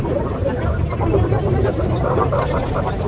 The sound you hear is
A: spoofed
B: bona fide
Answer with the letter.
A